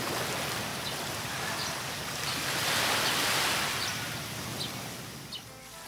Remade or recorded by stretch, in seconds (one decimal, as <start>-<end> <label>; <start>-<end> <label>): 0.0-0.7 recorded; 0.7-1.2 remade; 1.2-5.9 recorded